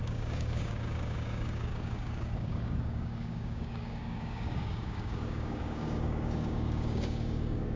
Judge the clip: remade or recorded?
remade